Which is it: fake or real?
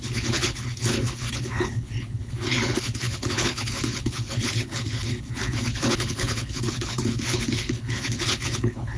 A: fake